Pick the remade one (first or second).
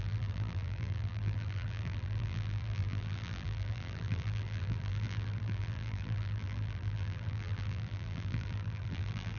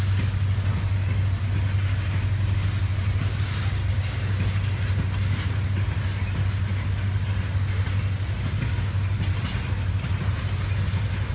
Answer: first